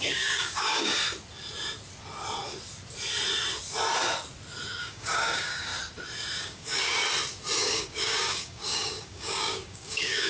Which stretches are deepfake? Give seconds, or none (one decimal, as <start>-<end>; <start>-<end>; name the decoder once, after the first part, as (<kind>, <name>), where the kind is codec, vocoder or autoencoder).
0.0-1.0 (codec, DAC); 4.8-5.7; 6.4-7.0; 7.6-10.3